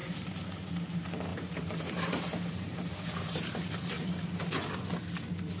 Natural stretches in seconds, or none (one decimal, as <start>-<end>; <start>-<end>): 0.7-1.3; 4.4-5.6